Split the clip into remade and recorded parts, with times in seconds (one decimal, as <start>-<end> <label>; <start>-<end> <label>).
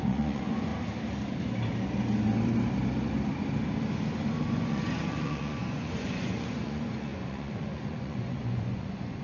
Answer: 0.0-0.7 remade; 0.7-4.5 recorded; 4.5-9.2 remade